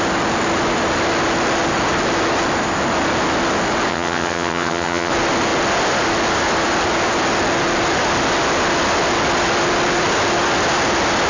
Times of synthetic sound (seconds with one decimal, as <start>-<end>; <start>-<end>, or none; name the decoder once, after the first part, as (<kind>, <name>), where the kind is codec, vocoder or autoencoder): 3.9-5.1 (vocoder, HiFi-GAN)